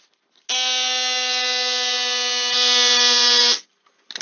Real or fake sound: real